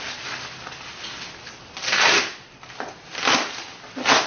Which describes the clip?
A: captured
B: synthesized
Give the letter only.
A